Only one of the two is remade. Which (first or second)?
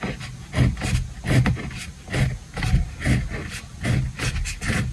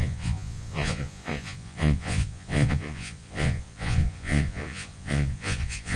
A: second